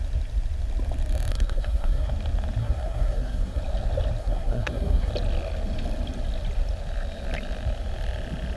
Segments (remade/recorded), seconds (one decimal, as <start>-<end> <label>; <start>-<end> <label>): 0.0-1.3 recorded; 1.3-2.1 remade; 2.1-2.6 recorded; 2.6-3.6 remade; 3.6-4.2 recorded; 4.2-5.1 remade; 5.1-8.6 recorded